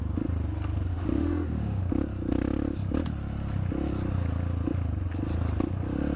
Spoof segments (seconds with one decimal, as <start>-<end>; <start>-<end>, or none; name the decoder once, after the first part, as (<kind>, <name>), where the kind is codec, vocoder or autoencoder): 0.9-1.8 (autoencoder, DAC-VAE)